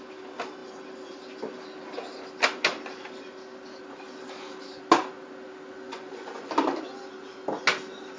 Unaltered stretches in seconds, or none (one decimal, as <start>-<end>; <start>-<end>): 0.0-5.9; 6.5-8.2